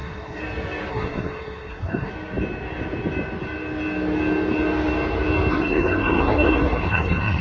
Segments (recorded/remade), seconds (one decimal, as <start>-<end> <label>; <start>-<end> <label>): 0.0-0.4 remade; 0.4-0.9 recorded; 0.9-2.1 remade; 2.1-5.5 recorded; 5.5-7.4 remade